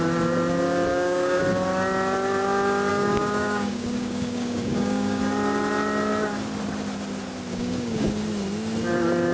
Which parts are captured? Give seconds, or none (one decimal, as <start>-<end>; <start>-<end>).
0.0-0.9; 1.4-2.9; 5.2-7.5; 8.1-9.3